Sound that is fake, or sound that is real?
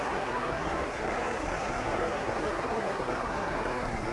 fake